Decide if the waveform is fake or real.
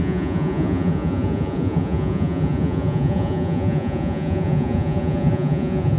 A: fake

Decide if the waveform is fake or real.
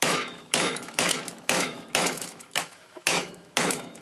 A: fake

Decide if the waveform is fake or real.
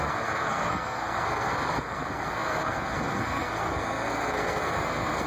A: fake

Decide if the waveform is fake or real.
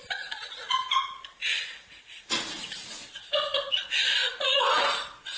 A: fake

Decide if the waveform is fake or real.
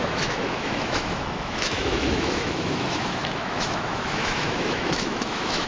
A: fake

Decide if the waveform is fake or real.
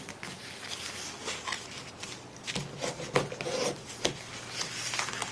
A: real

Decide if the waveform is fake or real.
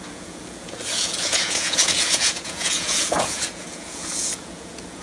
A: fake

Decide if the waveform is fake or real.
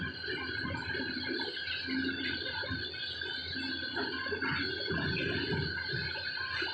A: real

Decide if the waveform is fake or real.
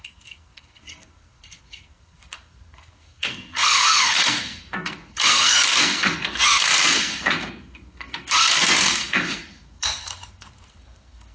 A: fake